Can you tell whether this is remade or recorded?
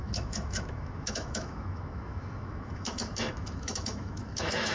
remade